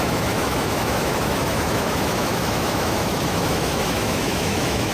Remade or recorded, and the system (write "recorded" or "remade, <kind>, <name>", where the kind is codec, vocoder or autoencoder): remade, autoencoder, DAC-VAE